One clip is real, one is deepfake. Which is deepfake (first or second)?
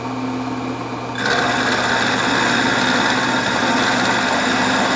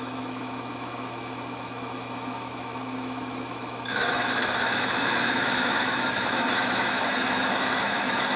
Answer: second